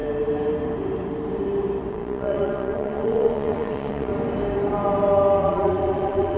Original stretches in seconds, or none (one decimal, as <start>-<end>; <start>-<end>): 0.0-1.9; 4.1-5.4